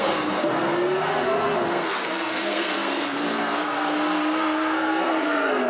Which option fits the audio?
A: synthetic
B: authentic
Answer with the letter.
A